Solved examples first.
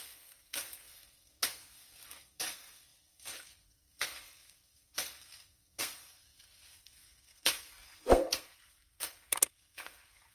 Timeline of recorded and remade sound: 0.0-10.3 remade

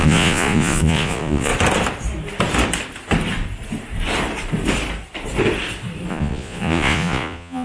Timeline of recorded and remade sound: 0.0-1.5 remade; 1.5-6.1 recorded; 6.1-7.6 remade

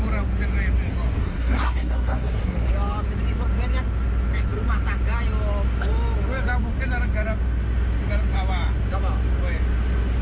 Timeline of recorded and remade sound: 0.0-1.2 recorded; 1.2-2.7 remade; 2.7-10.2 recorded